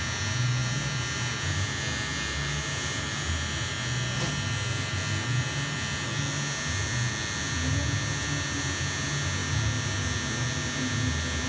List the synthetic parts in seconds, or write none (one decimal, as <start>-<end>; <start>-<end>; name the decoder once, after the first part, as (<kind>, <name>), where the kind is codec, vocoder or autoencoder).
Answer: none